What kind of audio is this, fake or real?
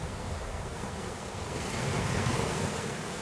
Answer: fake